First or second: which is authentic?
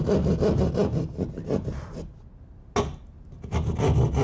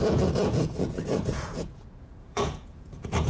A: first